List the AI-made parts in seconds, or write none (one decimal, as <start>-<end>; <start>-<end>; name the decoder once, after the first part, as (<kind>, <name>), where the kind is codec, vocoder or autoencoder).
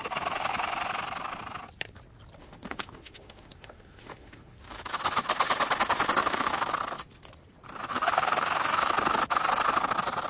2.4-4.9 (autoencoder, DAC-VAE); 6.2-6.7; 7.9-8.9